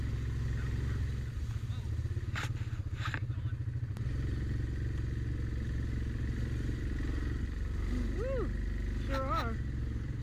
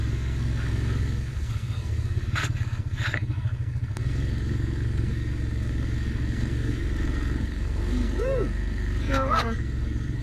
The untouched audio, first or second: first